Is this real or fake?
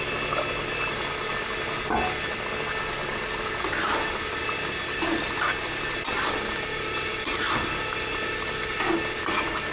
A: real